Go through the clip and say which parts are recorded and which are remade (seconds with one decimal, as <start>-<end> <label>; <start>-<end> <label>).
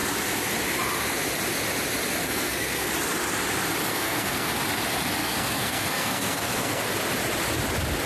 0.0-2.2 recorded; 2.2-2.9 remade; 2.9-3.9 recorded; 3.9-4.5 remade; 4.5-5.2 recorded; 5.2-6.8 remade; 6.8-8.1 recorded